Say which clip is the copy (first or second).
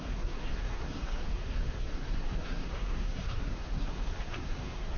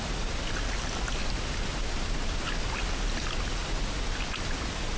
first